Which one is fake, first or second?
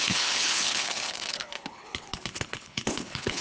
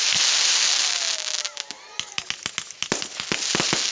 first